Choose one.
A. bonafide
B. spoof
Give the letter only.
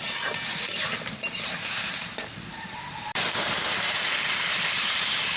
B